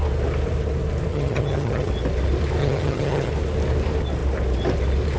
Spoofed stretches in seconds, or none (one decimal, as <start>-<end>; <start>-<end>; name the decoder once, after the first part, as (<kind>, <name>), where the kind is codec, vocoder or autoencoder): 1.1-1.9 (vocoder, HiFi-GAN); 2.6-3.3